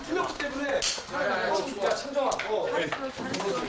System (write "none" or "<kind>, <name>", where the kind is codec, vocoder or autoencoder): none